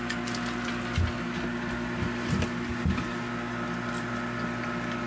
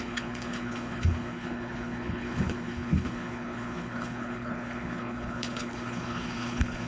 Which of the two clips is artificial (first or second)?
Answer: second